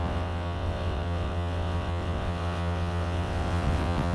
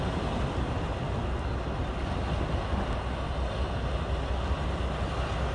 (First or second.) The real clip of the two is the second